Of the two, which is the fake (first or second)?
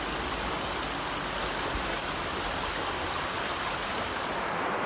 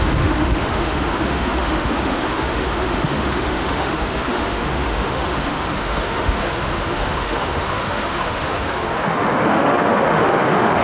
second